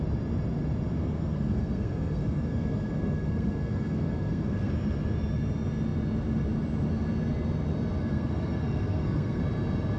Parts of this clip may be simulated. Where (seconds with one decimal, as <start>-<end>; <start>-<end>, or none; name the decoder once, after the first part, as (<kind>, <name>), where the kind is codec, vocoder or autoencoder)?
1.0-4.7 (codec, SNAC); 8.0-9.4